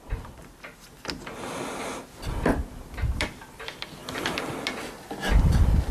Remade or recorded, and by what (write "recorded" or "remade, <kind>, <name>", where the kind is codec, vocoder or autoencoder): recorded